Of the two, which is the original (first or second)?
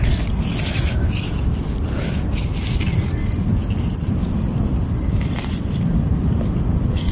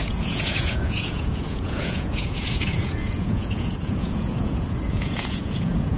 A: first